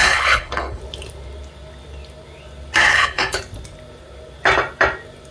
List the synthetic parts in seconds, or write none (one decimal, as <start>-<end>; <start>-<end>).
0.0-0.8; 2.9-3.4